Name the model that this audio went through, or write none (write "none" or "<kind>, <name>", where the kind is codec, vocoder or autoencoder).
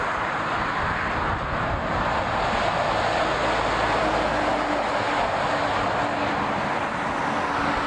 none